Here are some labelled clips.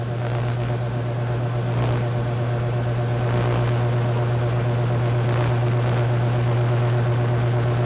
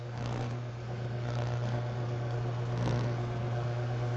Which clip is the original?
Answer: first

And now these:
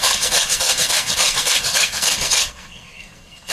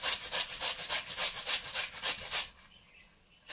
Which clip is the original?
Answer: second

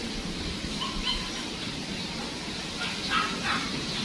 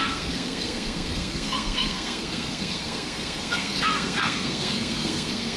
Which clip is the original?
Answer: first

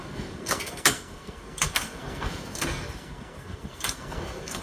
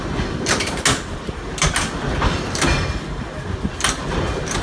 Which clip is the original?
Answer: second